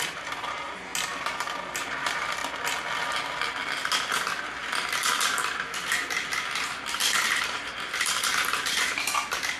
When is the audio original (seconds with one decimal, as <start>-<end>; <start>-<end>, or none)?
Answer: 0.9-1.8; 2.4-7.3